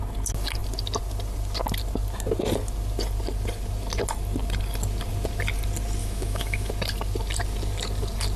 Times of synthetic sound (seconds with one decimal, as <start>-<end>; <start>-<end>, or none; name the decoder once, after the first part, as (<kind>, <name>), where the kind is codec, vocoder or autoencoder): 6.0-6.7 (autoencoder, DAC-VAE)